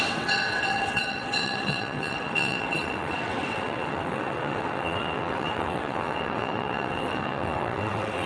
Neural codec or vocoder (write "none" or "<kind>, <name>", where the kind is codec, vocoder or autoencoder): vocoder, WaveNeXt